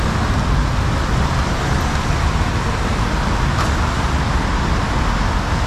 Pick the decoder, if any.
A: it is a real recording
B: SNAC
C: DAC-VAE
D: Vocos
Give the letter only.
A